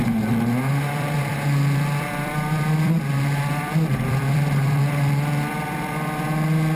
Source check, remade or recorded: remade